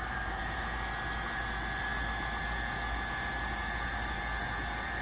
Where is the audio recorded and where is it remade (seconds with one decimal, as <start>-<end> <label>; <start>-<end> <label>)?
0.0-0.6 remade; 0.6-5.0 recorded